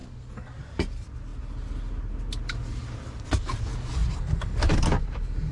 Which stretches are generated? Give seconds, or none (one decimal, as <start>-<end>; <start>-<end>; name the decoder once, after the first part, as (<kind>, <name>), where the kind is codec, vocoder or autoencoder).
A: 4.0-5.0 (vocoder, BigVGAN v2)

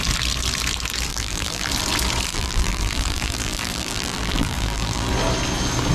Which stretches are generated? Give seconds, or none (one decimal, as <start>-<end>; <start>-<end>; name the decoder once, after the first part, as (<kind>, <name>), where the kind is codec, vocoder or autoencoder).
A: 1.1-1.7 (vocoder, BigVGAN v2); 2.3-5.1

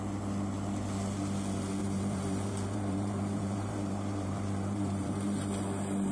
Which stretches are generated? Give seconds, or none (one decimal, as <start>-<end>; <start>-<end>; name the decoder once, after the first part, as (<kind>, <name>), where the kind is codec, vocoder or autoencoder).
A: 1.8-5.5 (vocoder, BigVGAN v2)